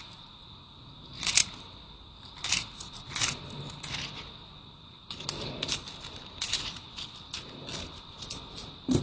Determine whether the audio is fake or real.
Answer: real